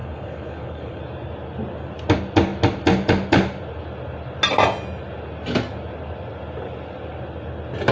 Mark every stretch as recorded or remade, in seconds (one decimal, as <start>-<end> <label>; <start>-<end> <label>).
0.0-1.0 remade; 1.0-7.9 recorded